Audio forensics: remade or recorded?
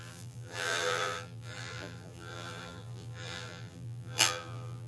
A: remade